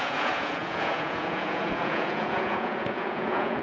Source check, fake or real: fake